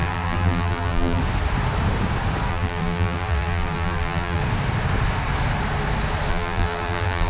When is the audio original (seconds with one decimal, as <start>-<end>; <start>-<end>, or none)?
1.2-2.5; 4.4-6.3